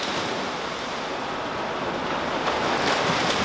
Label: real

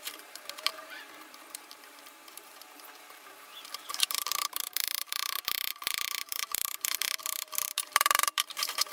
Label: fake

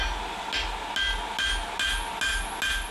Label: real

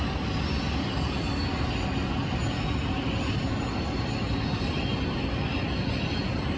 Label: real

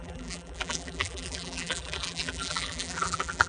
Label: fake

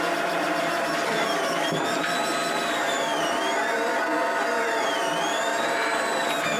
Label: fake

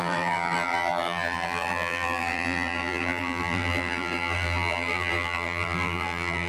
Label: fake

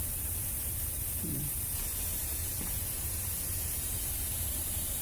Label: fake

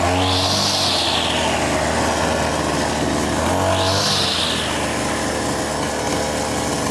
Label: real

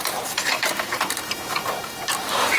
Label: fake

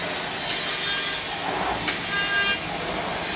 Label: real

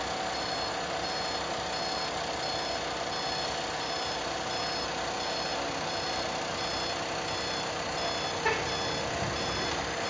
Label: real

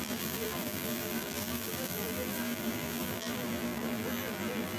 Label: fake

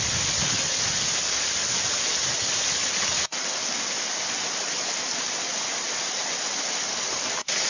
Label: real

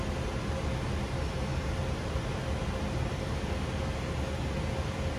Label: real